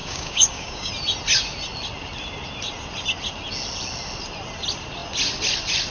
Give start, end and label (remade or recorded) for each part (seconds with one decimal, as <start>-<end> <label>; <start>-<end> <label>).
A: 0.0-0.9 remade; 0.9-5.9 recorded